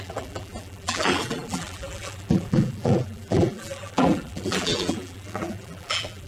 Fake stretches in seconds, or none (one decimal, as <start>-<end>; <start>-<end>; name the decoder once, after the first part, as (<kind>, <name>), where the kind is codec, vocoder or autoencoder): 0.0-6.3 (vocoder, BigVGAN v2)